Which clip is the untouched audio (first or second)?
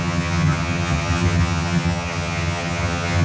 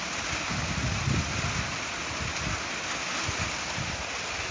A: second